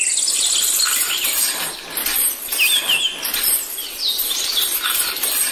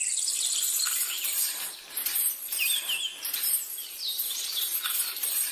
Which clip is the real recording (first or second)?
first